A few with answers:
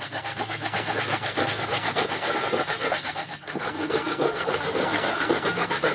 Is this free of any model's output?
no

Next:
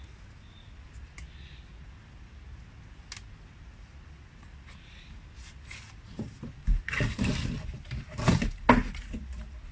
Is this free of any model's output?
yes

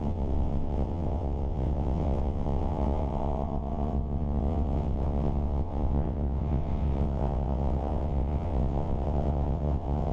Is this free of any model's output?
no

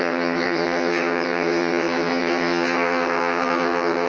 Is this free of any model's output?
no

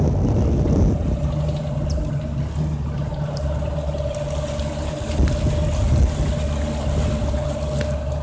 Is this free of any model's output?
yes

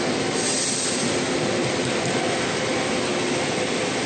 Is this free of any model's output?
yes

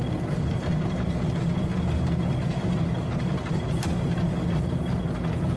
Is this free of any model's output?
yes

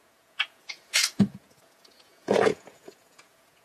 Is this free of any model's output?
no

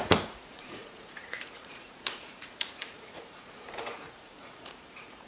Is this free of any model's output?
no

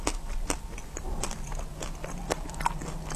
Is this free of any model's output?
yes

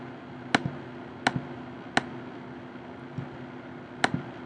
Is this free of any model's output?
yes